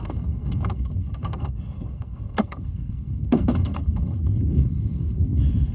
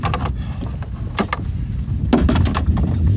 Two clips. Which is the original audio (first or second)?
second